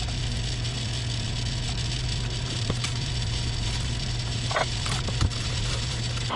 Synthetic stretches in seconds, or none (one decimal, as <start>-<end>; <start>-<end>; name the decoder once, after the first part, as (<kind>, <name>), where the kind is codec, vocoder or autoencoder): 2.4-6.4 (vocoder, BigVGAN v2)